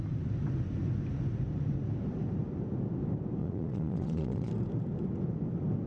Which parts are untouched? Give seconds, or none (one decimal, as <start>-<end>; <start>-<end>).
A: 0.0-3.4; 4.5-5.9